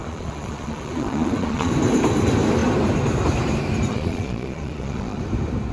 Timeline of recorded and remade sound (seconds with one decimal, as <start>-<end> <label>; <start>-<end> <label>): 0.0-1.7 remade; 1.7-3.9 recorded; 3.9-5.2 remade; 5.2-5.7 recorded